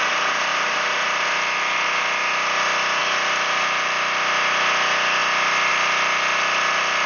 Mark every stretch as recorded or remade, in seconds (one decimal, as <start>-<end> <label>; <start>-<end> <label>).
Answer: 0.0-7.1 recorded